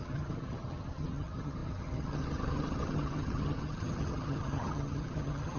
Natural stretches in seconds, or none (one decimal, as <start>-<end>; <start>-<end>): none